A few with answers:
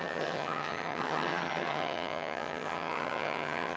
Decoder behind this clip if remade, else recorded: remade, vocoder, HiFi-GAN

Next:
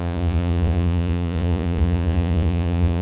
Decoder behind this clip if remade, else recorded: remade, vocoder, Vocos